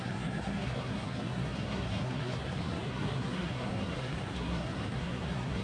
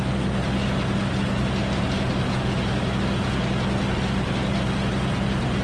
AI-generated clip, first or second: first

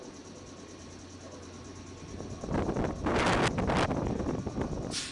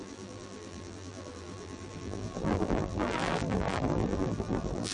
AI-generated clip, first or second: second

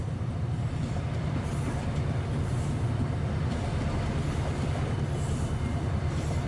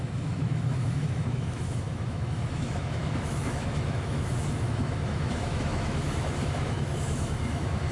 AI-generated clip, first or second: second